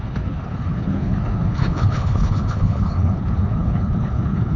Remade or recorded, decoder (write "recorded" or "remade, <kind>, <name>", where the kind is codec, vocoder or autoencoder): remade, codec, HILCodec